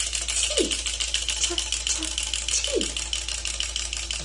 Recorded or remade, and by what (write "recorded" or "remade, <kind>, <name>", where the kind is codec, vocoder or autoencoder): recorded